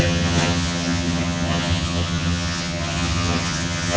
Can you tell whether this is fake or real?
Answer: fake